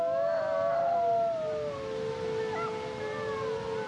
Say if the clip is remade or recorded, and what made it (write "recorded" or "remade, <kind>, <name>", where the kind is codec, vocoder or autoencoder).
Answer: recorded